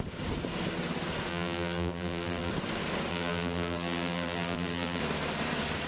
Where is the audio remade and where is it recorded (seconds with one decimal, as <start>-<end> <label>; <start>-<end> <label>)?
0.0-1.3 recorded; 1.3-2.5 remade; 2.5-3.1 recorded; 3.1-5.0 remade; 5.0-5.9 recorded